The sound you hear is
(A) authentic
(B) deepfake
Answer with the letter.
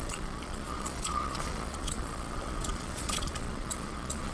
B